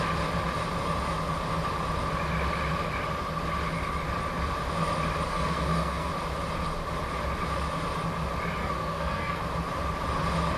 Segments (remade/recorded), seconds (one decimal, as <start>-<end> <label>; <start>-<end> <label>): 0.0-5.3 recorded; 5.3-6.1 remade; 6.1-8.6 recorded; 8.6-9.4 remade; 9.4-10.6 recorded